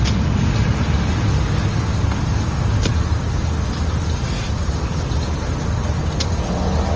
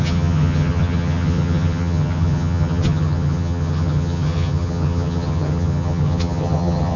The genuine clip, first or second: first